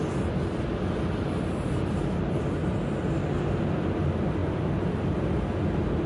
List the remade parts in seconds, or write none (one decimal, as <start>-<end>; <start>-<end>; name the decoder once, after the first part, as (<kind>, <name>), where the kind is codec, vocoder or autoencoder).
none